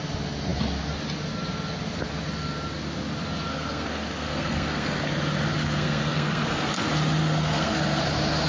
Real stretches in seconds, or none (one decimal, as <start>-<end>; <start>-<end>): 0.0-3.5; 5.0-5.6; 6.7-7.2; 8.0-8.5